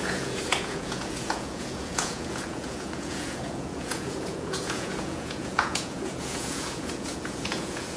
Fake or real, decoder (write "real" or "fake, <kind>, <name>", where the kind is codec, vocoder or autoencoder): fake, vocoder, Vocos